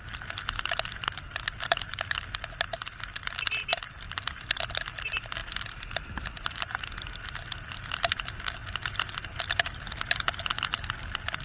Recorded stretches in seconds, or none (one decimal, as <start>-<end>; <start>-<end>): 0.0-11.4